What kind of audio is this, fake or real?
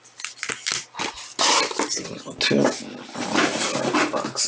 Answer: real